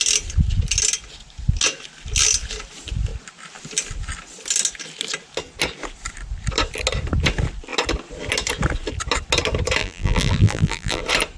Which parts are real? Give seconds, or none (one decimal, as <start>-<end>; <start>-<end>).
0.0-9.8; 11.0-11.4